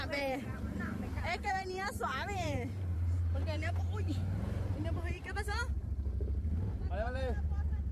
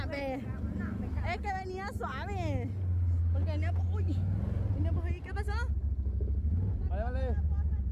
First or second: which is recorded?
second